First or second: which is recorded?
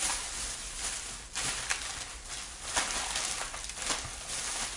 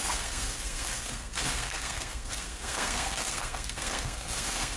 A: first